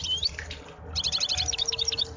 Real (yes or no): yes